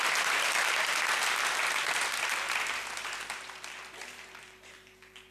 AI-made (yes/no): yes